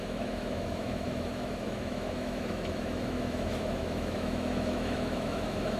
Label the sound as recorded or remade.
remade